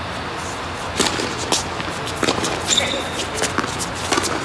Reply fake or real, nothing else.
real